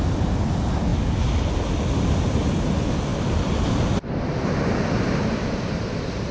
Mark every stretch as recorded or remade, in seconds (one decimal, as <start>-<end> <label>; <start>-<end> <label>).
0.0-6.3 recorded